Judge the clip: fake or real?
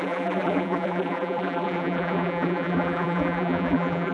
fake